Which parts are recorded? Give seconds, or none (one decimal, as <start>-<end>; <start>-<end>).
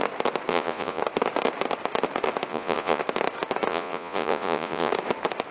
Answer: 0.0-0.5; 1.0-2.5; 3.0-3.7; 4.9-5.5